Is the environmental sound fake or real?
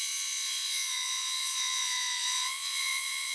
fake